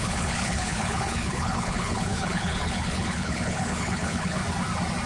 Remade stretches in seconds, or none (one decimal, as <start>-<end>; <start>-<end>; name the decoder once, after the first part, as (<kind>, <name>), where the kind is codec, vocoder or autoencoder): 0.0-4.4 (codec, HILCodec)